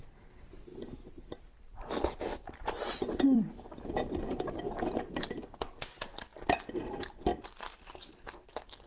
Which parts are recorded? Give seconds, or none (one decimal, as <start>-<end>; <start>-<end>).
0.0-0.7; 1.6-2.3; 3.9-8.9